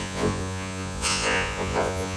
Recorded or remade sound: remade